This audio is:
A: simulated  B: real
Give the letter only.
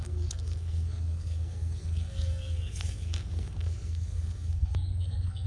A